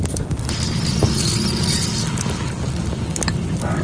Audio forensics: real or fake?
real